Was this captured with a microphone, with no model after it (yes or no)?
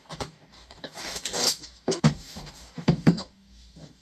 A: no